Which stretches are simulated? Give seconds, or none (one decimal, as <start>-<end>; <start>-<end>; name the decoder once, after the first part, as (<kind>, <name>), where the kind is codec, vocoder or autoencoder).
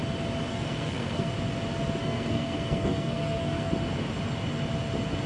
0.5-1.3 (codec, SNAC); 2.0-3.7